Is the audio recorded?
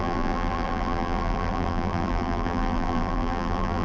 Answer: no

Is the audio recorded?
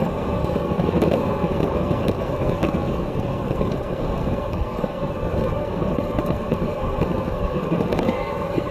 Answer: no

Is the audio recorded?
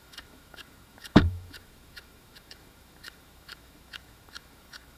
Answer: no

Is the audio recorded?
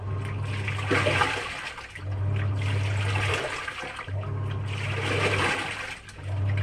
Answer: yes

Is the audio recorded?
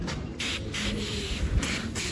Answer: yes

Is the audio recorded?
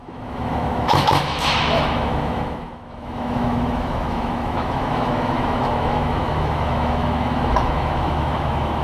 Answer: no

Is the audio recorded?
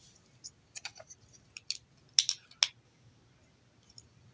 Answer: yes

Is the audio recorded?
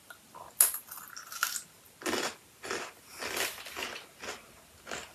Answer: yes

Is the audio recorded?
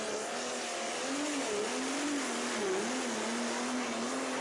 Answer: yes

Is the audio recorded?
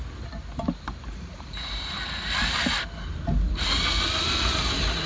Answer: yes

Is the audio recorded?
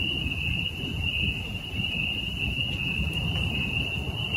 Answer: yes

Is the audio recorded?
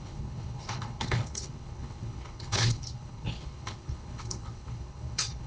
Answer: no